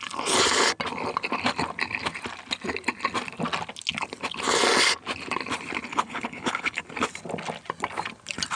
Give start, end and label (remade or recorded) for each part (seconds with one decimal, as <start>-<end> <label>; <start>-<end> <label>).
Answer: 0.0-5.9 recorded; 5.9-6.8 remade; 6.8-8.6 recorded